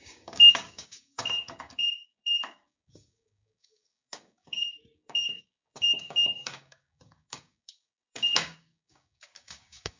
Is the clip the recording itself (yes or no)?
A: no